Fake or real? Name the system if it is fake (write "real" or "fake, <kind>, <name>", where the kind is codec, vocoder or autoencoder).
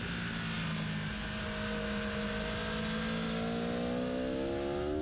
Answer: real